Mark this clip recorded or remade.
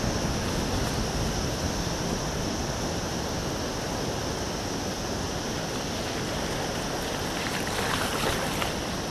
recorded